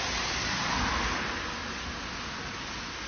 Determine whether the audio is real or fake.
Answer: real